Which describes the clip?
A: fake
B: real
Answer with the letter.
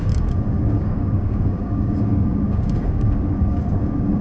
A